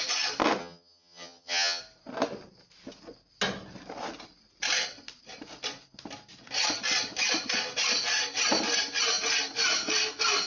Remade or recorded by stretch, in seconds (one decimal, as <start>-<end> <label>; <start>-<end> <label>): 0.0-0.6 recorded; 0.6-1.8 remade; 1.8-10.5 recorded